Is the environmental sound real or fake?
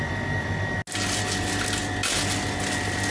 real